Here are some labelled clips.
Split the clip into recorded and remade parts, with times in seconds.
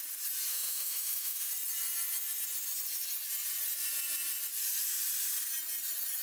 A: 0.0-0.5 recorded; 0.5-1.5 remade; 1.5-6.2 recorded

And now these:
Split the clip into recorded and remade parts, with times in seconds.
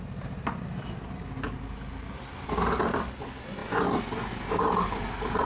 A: 0.0-5.4 recorded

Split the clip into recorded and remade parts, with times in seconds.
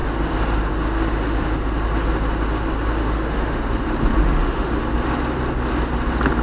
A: 0.0-3.0 recorded; 3.0-3.6 remade; 3.6-4.2 recorded; 4.2-4.7 remade; 4.7-6.4 recorded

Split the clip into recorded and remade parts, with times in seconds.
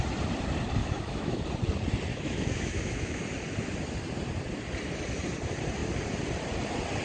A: 0.0-0.8 recorded; 0.8-1.4 remade; 1.4-2.1 recorded; 2.1-3.2 remade; 3.2-7.0 recorded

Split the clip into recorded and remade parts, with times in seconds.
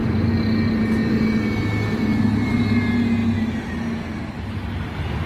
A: 0.0-5.3 recorded